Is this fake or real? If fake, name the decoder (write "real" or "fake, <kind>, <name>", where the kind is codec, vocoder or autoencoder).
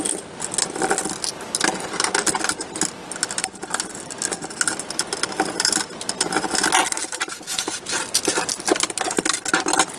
real